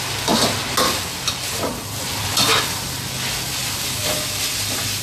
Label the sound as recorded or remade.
recorded